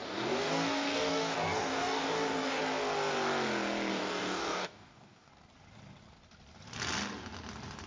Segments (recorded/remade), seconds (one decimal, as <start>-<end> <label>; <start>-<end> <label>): 0.0-2.6 remade; 2.6-3.9 recorded; 3.9-5.3 remade; 5.3-7.9 recorded